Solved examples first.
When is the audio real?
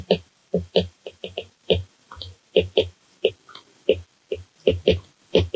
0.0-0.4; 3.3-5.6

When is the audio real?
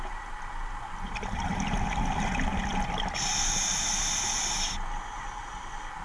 0.0-6.0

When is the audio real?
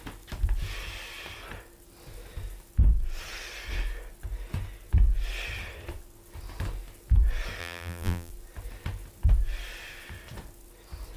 0.0-7.6; 8.3-11.2